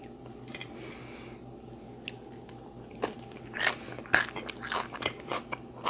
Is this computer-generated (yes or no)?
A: no